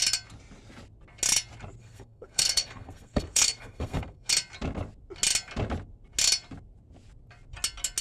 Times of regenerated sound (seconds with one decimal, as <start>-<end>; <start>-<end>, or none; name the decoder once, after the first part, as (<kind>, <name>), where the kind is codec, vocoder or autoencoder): 1.8-4.3 (codec, SNAC)

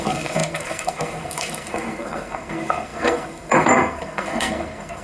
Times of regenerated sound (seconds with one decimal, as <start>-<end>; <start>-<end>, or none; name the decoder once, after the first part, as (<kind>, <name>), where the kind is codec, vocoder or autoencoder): 0.0-5.0 (codec, SNAC)

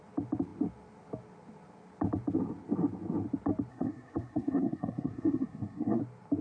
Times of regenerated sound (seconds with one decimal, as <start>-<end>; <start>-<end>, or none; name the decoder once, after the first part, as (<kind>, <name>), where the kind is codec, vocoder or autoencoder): 3.7-6.0 (codec, SNAC)

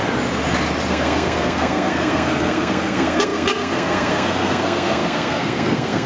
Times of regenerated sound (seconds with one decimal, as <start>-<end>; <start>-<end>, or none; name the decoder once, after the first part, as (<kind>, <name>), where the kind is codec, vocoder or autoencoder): 0.9-6.1 (codec, SNAC)

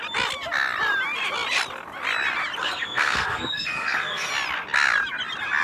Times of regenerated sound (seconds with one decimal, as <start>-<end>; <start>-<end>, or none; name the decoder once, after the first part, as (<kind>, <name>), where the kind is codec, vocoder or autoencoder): 2.6-4.3 (codec, SNAC)